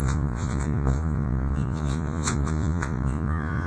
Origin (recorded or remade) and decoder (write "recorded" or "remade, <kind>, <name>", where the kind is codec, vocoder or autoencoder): remade, vocoder, Vocos